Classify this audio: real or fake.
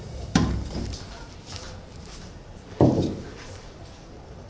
fake